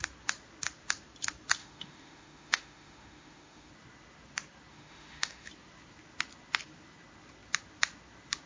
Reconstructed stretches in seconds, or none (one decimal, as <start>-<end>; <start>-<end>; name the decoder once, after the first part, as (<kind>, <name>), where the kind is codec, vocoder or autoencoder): 1.6-3.7 (autoencoder, DAC-VAE); 4.7-5.5